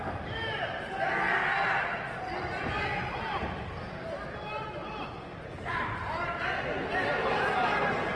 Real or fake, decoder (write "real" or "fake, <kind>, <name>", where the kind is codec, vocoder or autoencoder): real